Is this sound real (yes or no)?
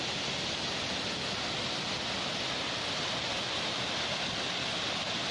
yes